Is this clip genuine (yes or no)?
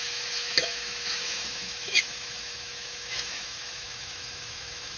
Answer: no